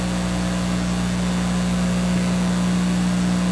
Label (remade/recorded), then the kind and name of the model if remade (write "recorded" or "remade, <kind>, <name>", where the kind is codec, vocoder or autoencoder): recorded